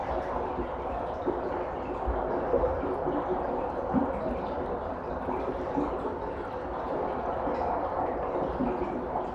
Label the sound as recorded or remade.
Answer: recorded